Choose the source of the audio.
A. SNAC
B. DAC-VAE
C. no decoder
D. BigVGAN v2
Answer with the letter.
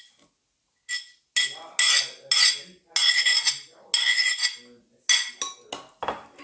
C